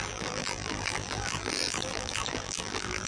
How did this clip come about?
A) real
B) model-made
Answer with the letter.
B